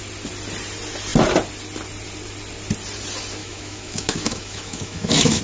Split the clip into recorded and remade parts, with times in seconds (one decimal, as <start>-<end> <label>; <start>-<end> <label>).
0.0-3.4 recorded; 3.4-5.4 remade